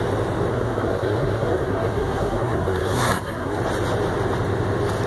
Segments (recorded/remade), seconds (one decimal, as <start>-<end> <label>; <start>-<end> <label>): 0.0-0.5 recorded; 0.5-3.6 remade; 3.6-5.1 recorded